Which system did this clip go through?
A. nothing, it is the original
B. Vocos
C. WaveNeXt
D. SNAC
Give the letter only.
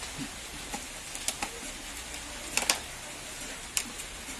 A